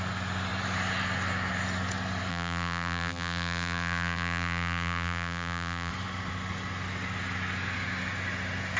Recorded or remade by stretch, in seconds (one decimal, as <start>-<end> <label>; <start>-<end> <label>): 0.0-2.3 recorded; 2.3-5.9 remade; 5.9-8.8 recorded

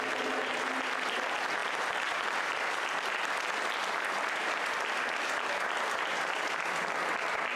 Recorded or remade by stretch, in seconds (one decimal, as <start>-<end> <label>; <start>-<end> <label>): 0.0-1.6 recorded; 1.6-2.6 remade; 2.6-7.6 recorded

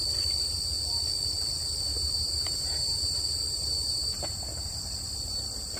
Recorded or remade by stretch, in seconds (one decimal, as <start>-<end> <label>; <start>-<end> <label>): 0.0-1.9 recorded; 1.9-4.9 remade; 4.9-5.8 recorded

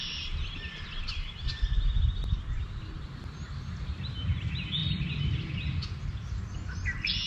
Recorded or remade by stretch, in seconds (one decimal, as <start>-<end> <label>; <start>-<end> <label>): 0.0-4.8 recorded; 4.8-6.4 remade; 6.4-7.3 recorded

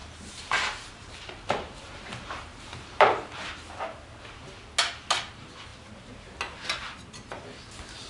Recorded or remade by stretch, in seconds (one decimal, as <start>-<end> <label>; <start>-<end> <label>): 0.0-3.8 remade; 3.8-8.1 recorded

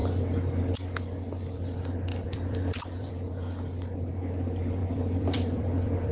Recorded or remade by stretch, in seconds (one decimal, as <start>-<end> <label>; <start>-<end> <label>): 0.0-2.1 recorded; 2.1-3.1 remade; 3.1-4.8 recorded; 4.8-6.1 remade

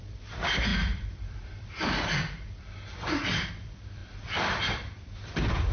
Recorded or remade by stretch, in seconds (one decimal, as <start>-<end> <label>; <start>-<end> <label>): 0.0-5.7 remade

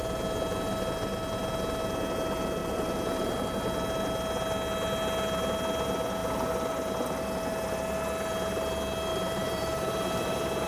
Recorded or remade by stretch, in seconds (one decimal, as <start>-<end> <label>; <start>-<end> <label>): 0.0-2.6 recorded; 2.6-3.4 remade; 3.4-9.1 recorded; 9.1-9.9 remade; 9.9-10.7 recorded